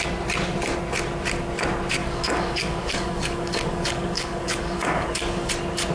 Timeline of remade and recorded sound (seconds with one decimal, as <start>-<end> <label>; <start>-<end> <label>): 0.0-2.0 recorded; 2.0-5.5 remade; 5.5-5.9 recorded